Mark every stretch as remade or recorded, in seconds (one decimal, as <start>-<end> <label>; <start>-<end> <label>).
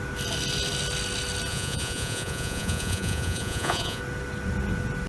0.0-1.5 recorded; 1.5-4.0 remade; 4.0-5.1 recorded